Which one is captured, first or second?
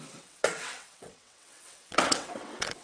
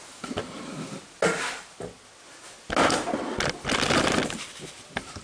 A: second